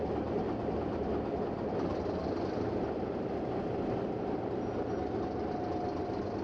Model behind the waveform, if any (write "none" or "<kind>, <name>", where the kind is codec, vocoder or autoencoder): none